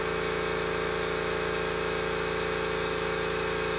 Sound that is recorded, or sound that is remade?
remade